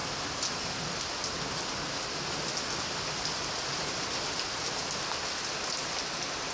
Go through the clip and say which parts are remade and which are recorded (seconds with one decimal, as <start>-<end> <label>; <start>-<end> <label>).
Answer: 0.0-6.5 recorded